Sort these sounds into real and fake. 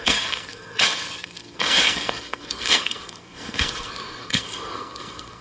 fake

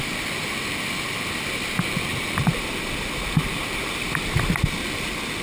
fake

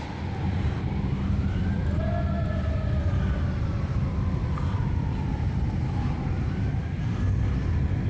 real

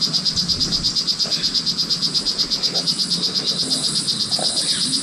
real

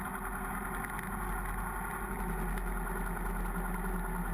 real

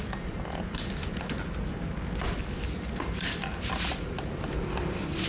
real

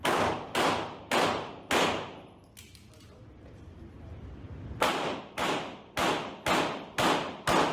real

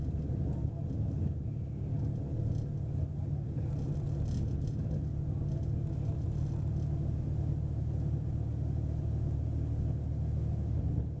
real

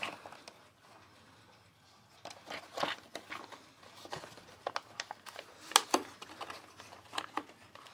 real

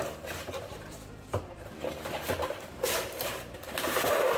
fake